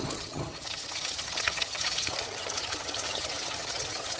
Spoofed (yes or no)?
yes